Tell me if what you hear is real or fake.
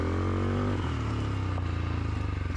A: real